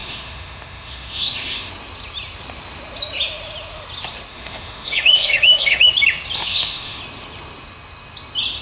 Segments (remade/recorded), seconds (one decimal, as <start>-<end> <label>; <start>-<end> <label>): 0.0-1.7 remade; 1.7-4.3 recorded; 4.3-5.9 remade; 5.9-6.4 recorded; 6.4-7.0 remade; 7.0-8.6 recorded